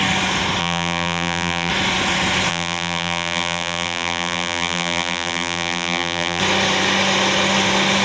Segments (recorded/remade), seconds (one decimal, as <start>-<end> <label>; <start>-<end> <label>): 0.0-0.6 recorded; 0.6-1.7 remade; 1.7-2.5 recorded; 2.5-6.4 remade; 6.4-8.0 recorded